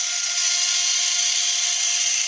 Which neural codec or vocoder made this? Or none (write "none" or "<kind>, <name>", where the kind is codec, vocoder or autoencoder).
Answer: none